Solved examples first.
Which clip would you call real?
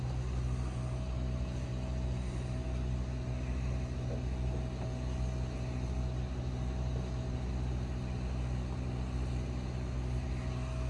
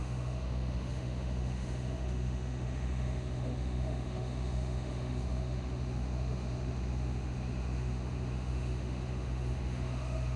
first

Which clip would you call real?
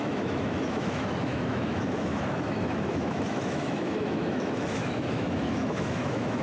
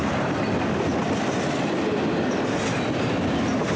second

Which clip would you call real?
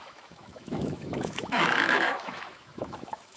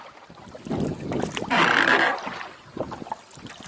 second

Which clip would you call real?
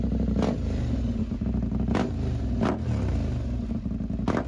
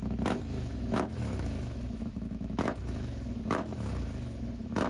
first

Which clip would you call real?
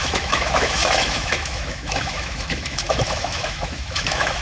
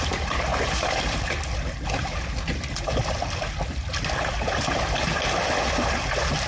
second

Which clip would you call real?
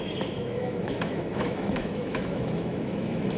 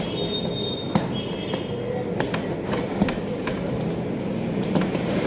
second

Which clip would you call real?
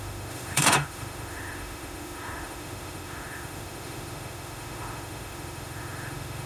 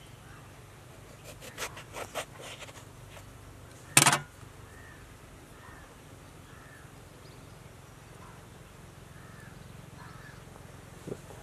second